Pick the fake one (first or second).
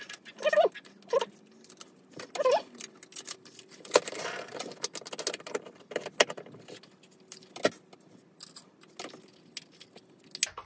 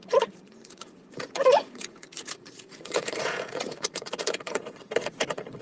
second